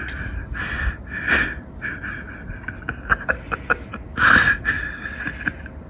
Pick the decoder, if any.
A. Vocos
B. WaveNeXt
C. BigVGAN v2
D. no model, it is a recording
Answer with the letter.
D